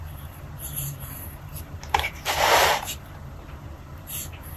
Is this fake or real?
fake